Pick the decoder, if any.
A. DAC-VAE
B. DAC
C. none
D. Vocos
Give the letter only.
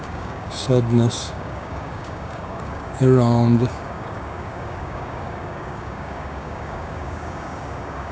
B